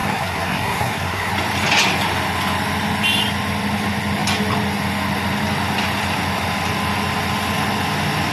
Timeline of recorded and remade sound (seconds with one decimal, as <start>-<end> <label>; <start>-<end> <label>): 0.0-1.3 remade; 1.3-8.3 recorded